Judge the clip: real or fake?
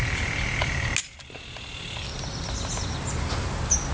real